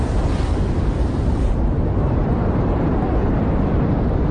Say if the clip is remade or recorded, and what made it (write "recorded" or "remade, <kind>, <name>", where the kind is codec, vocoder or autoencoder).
remade, vocoder, BigVGAN v2